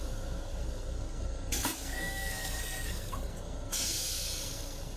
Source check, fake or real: fake